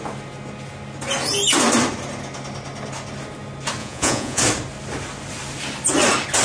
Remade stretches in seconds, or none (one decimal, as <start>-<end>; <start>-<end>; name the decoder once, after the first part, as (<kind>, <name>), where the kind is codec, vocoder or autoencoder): 3.8-4.4 (vocoder, Vocos)